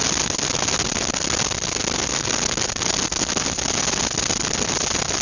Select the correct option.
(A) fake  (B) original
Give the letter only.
B